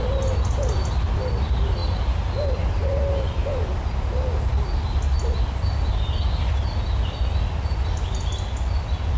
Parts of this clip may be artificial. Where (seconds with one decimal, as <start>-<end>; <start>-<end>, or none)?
none